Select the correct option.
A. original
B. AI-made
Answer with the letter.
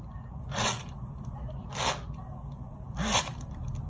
A